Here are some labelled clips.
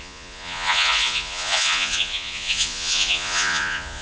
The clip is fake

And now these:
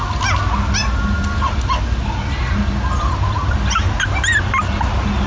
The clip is real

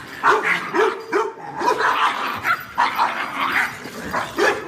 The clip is real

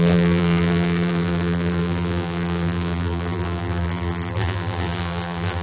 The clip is fake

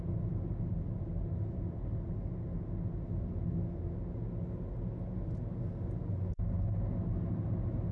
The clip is real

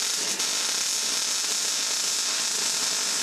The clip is real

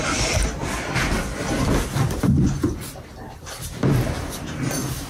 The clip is real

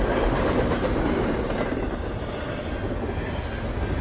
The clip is real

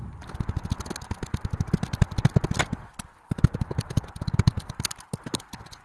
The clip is real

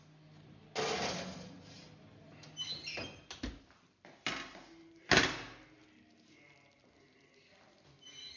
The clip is real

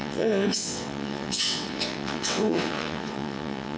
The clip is fake